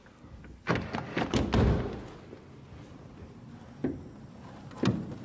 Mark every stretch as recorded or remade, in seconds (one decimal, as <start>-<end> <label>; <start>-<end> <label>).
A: 0.0-5.2 recorded